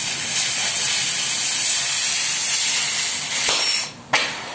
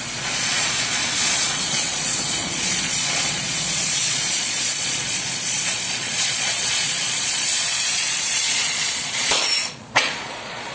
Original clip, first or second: first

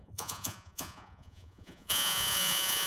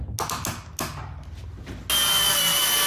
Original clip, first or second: second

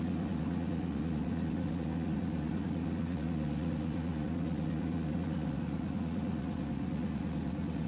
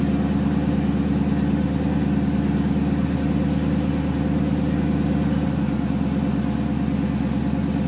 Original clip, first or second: second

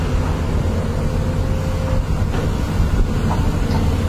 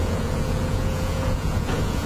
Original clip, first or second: first